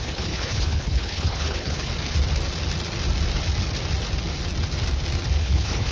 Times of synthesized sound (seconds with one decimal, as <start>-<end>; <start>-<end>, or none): 0.0-1.9; 5.4-5.9